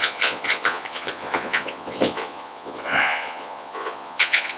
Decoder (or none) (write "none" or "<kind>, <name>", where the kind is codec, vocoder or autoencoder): vocoder, Vocos